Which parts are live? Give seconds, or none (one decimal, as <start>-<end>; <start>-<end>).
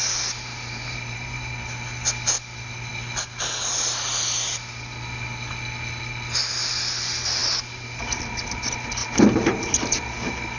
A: 0.0-0.5; 1.5-9.0; 10.0-10.6